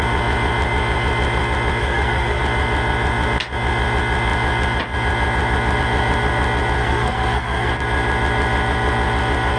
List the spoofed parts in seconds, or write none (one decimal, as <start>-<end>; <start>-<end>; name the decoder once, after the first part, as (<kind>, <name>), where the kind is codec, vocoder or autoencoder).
1.8-2.4 (codec, SNAC); 6.8-7.7